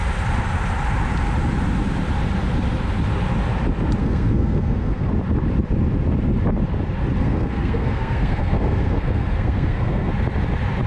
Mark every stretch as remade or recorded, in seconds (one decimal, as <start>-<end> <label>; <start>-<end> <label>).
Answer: 0.0-4.0 recorded; 4.0-5.1 remade; 5.1-7.2 recorded; 7.2-10.1 remade; 10.1-10.9 recorded